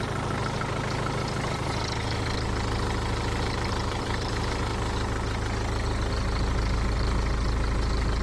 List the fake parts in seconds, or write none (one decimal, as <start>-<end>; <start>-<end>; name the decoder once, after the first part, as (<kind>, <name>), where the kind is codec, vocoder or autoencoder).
0.0-0.4 (vocoder, BigVGAN v2); 3.4-4.7; 6.1-8.2